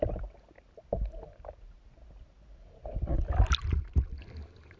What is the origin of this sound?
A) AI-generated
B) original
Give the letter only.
B